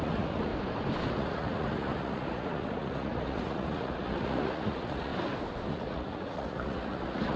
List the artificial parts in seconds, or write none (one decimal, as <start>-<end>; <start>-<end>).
0.0-0.5; 1.1-5.1; 5.7-7.4

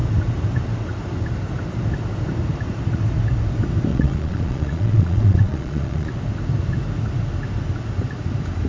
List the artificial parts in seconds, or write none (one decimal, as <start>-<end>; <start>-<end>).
3.9-6.1